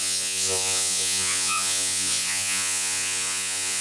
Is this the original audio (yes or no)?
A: no